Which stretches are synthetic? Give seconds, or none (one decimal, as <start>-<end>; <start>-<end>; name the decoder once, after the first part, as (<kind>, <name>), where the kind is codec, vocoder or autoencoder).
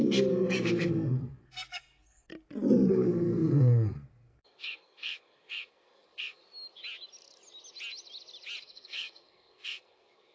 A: 0.0-2.3 (codec, SNAC); 2.9-6.4; 8.6-10.3